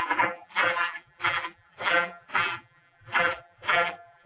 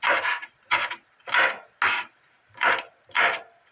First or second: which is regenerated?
first